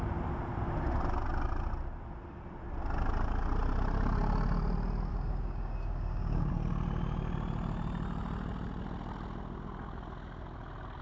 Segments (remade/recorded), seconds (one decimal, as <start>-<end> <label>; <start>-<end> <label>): 0.0-5.1 recorded; 5.1-6.5 remade; 6.5-11.0 recorded